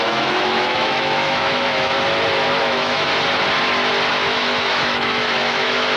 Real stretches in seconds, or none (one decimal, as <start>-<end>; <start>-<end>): 1.9-2.6; 3.1-4.1